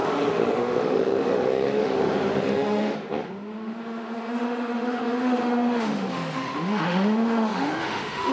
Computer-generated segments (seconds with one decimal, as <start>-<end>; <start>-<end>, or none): 0.0-8.3